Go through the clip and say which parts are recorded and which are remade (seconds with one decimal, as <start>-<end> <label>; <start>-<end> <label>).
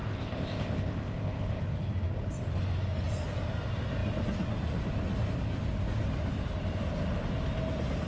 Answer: 0.0-1.6 remade; 1.6-8.1 recorded